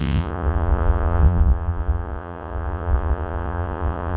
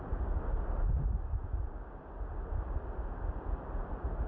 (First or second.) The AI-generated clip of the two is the first